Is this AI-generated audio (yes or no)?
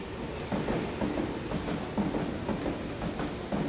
no